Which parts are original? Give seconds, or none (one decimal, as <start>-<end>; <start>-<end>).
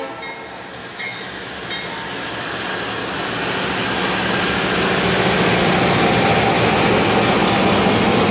0.0-0.8; 1.5-8.3